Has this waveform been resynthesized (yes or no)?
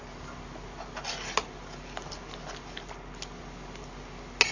no